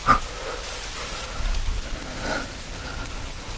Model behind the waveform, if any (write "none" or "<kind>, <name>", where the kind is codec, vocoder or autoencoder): none